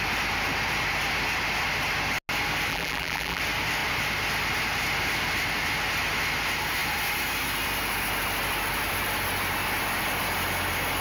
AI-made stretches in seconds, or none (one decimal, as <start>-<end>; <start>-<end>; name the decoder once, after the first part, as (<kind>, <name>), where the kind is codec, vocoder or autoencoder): 2.7-3.4 (vocoder, BigVGAN v2)